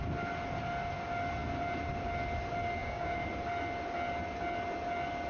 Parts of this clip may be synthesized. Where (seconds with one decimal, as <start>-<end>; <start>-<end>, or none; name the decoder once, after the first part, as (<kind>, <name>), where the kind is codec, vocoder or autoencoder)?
2.8-3.3 (codec, DAC)